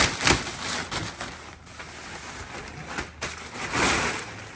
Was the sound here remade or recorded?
recorded